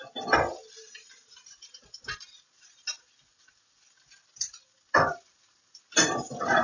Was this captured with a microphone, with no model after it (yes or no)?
yes